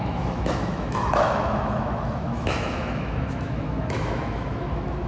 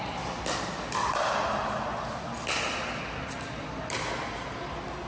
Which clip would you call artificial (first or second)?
first